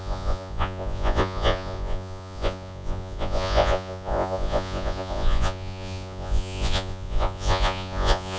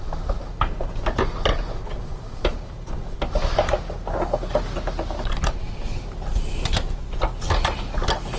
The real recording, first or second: second